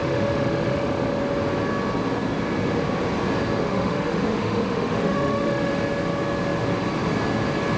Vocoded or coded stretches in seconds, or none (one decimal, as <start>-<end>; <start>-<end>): 0.0-1.2; 3.6-5.7